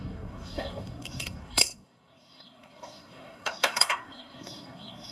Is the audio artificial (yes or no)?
yes